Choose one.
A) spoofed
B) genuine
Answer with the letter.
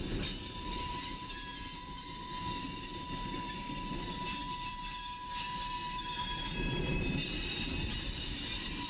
A